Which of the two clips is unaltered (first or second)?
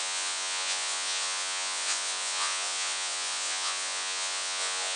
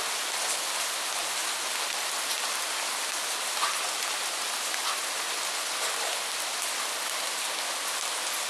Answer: second